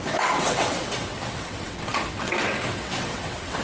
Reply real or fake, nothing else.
fake